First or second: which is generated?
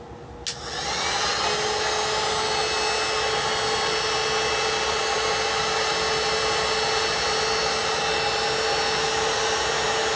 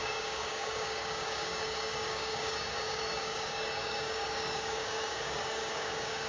second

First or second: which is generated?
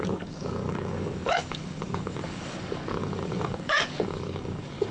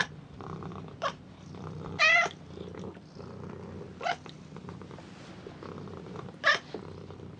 first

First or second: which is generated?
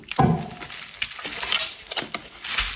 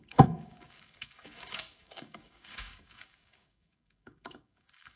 second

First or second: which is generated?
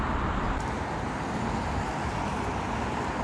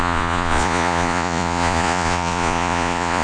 second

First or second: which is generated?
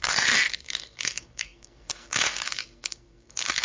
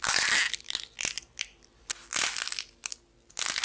first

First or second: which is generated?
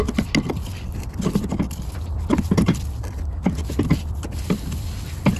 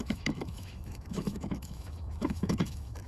second